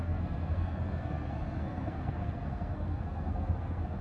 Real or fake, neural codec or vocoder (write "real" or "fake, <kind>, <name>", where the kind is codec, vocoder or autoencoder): fake, codec, SNAC